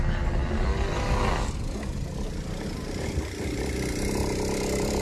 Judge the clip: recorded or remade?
recorded